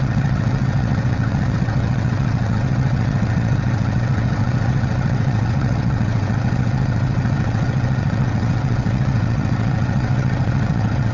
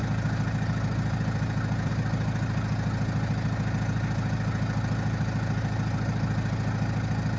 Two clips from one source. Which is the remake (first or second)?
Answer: first